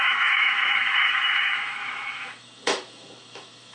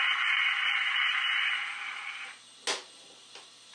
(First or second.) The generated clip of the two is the first